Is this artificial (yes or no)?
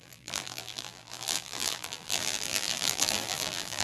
yes